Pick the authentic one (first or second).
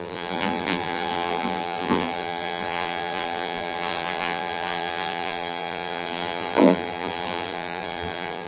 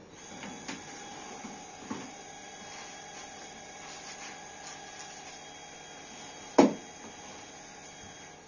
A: second